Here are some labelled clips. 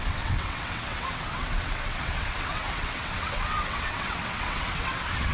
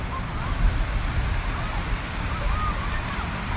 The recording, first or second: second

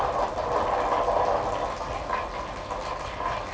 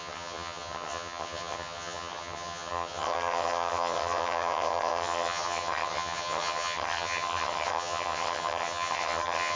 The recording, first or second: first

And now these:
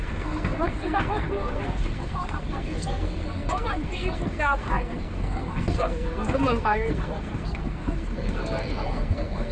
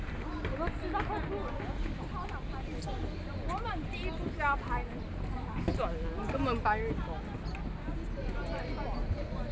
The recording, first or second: second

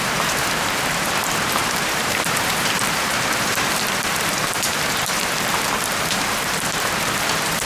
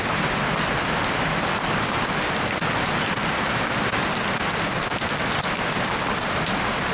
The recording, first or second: second